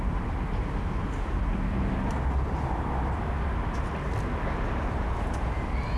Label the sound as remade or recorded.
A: recorded